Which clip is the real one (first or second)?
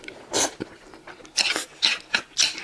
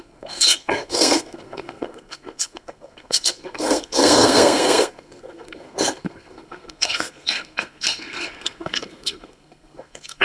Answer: first